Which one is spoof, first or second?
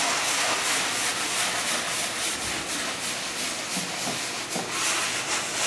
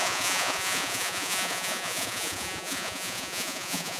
second